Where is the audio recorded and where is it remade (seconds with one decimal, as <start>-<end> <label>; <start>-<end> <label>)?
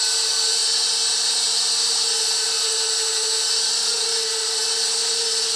0.0-5.6 recorded